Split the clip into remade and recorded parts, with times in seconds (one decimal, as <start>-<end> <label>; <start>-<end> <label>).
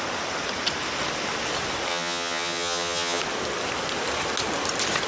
0.0-1.9 recorded; 1.9-3.2 remade; 3.2-5.1 recorded